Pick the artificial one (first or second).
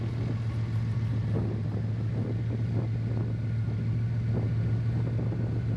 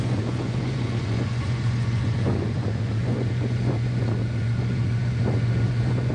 second